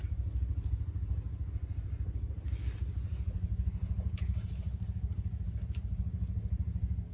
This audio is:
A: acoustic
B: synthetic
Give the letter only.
A